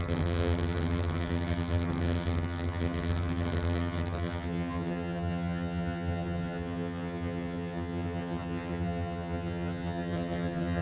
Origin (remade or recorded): remade